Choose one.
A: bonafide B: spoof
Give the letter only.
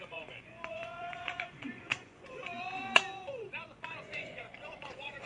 B